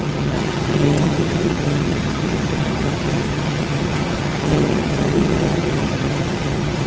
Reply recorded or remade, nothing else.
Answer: remade